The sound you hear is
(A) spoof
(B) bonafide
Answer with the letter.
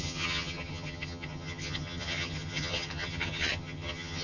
A